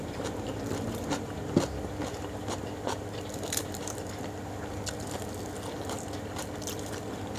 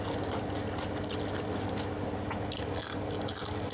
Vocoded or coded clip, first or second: first